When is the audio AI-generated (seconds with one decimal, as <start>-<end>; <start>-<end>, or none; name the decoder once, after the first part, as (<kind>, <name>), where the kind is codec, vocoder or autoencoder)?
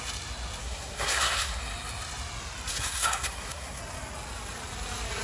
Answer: 0.6-1.6 (codec, SNAC); 2.7-3.8